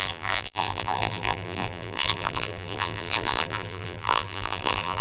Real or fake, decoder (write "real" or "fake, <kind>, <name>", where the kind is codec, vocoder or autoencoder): fake, vocoder, BigVGAN v2